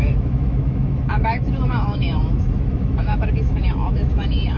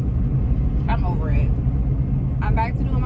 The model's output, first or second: first